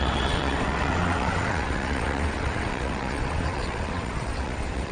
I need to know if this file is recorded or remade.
remade